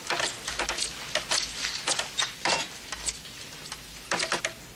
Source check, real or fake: real